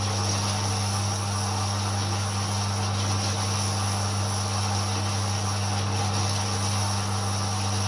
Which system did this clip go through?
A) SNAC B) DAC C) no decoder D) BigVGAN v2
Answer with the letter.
C